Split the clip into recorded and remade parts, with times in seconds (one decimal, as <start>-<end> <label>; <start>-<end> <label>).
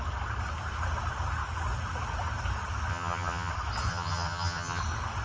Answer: 0.0-2.9 recorded; 2.9-3.5 remade; 3.5-3.9 recorded; 3.9-4.8 remade; 4.8-5.2 recorded